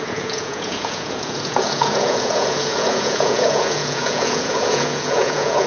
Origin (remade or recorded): remade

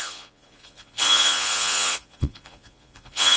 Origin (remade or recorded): remade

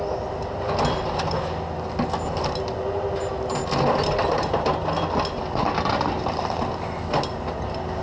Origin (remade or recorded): recorded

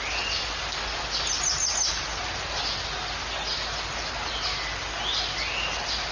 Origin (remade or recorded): recorded